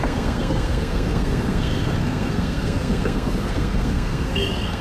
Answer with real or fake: fake